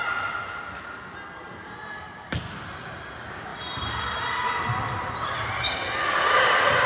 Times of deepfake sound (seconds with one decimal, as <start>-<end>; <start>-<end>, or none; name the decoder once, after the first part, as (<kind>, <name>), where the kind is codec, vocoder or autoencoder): none